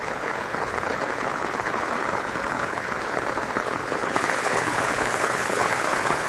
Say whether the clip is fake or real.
fake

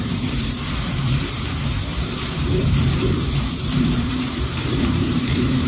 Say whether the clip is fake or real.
fake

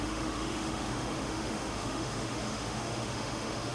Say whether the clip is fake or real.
fake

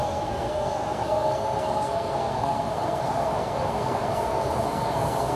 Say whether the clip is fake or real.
fake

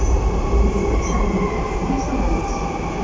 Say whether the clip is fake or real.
real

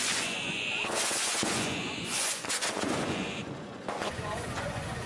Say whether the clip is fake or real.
fake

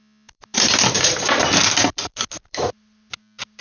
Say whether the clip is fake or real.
fake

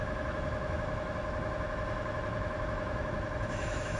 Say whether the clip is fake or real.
fake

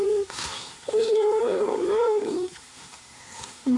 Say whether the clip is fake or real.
fake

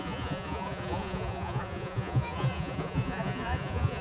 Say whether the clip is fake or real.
fake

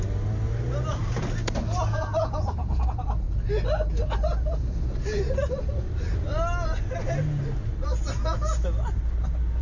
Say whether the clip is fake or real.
real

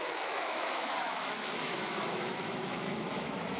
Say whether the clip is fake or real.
fake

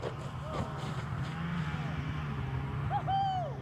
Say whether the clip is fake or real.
real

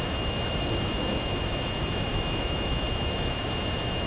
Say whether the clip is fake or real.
fake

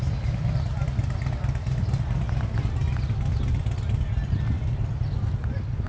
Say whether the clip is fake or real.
real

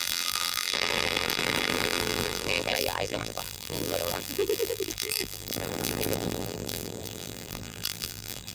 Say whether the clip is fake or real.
fake